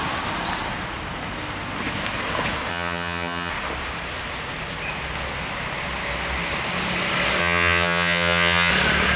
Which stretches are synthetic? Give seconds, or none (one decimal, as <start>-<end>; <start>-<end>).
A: 2.7-3.5; 7.4-8.7